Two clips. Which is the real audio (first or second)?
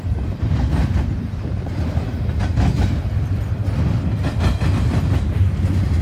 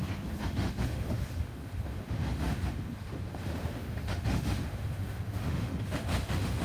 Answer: first